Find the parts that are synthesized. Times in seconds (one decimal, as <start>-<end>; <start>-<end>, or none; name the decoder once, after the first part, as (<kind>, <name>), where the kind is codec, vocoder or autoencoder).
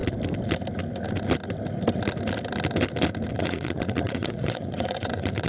3.3-5.5 (vocoder, Vocos)